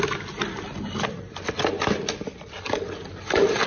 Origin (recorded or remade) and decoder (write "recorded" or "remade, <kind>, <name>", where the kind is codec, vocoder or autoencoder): recorded